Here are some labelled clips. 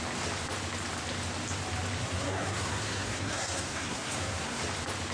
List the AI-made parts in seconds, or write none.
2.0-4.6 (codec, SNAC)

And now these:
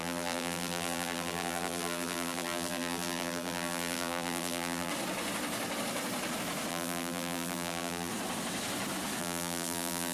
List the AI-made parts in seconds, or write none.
0.0-4.9 (vocoder, BigVGAN v2); 6.7-8.1; 9.2-10.1

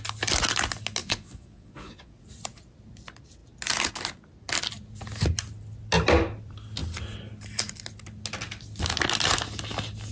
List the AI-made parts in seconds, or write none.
1.0-2.1 (vocoder, Vocos)